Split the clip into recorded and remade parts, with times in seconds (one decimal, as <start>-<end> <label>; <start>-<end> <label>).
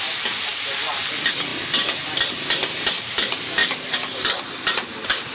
0.0-5.3 recorded